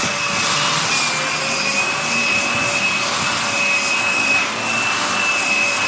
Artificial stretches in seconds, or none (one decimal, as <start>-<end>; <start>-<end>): none